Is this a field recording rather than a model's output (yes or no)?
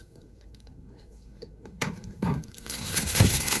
no